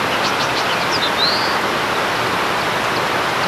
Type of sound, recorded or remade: recorded